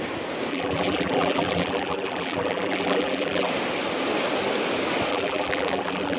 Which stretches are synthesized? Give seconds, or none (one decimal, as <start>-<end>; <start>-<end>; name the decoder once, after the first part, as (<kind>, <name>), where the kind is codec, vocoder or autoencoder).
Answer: 0.5-3.5 (vocoder, BigVGAN v2); 5.1-6.2